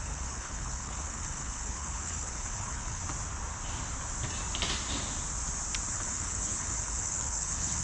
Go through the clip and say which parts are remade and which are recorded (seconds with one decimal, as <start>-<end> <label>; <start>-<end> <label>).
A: 0.0-3.0 remade; 3.0-5.9 recorded; 5.9-7.8 remade